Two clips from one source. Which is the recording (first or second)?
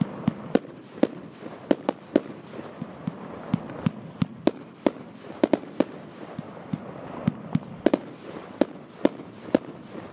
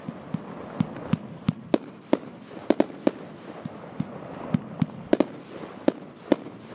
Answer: second